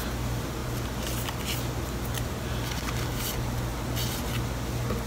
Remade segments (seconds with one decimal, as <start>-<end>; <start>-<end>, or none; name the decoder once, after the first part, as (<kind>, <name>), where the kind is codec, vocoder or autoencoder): 3.7-4.3 (vocoder, BigVGAN v2)